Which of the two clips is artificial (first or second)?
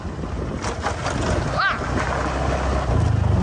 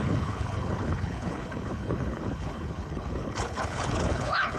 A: second